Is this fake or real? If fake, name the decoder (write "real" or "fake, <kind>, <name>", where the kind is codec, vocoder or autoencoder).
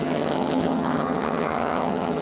fake, vocoder, HiFi-GAN